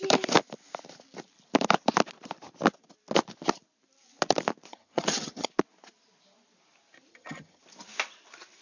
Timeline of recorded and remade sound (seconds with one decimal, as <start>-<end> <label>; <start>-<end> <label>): 0.0-4.7 recorded; 4.7-5.5 remade; 5.5-7.1 recorded; 7.1-7.6 remade; 7.6-8.6 recorded